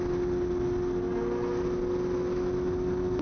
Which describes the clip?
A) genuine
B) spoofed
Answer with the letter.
A